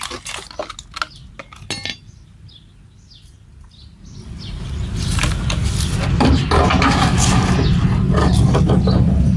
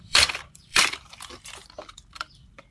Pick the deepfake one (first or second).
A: second